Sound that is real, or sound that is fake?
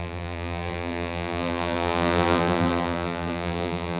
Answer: fake